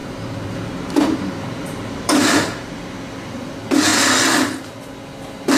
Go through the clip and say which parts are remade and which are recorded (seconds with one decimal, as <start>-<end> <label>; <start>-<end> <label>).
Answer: 0.0-2.8 remade; 2.8-5.6 recorded